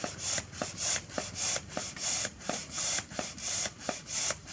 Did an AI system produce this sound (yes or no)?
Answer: yes